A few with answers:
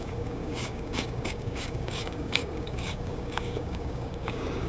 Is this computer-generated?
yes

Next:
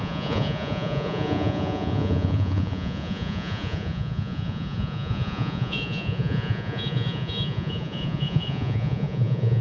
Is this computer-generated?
yes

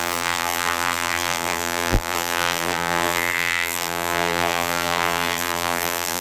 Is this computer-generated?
yes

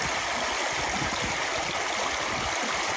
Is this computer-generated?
no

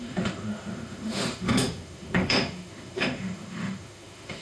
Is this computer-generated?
yes